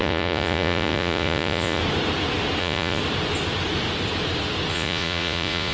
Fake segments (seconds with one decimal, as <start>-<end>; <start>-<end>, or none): 0.0-1.8; 2.6-3.0; 4.7-5.7